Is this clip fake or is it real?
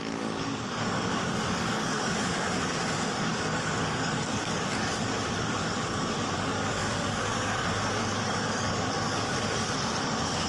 fake